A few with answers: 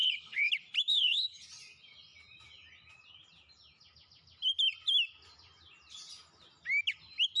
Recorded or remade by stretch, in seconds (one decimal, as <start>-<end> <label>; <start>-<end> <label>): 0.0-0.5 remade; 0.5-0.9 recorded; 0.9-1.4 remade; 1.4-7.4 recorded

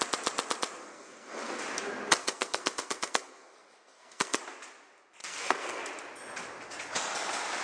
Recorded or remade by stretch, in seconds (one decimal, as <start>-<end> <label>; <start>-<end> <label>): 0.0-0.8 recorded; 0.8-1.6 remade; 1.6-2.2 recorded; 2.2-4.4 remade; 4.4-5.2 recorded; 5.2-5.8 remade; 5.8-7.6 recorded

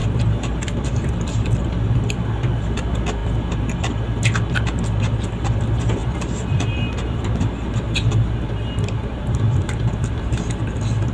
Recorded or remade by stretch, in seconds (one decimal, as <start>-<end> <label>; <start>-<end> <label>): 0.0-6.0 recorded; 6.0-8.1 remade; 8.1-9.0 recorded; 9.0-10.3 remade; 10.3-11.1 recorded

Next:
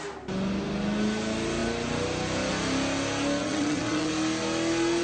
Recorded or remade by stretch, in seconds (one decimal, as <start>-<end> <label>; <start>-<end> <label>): 0.0-3.4 recorded; 3.4-4.1 remade; 4.1-5.0 recorded

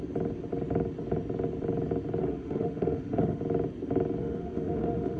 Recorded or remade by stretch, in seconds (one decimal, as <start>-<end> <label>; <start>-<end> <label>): 0.0-2.2 recorded; 2.2-3.4 remade; 3.4-4.2 recorded; 4.2-5.2 remade

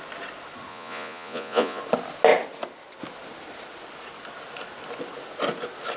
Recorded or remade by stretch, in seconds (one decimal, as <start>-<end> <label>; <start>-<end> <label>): 0.0-0.7 recorded; 0.7-1.8 remade; 1.8-6.0 recorded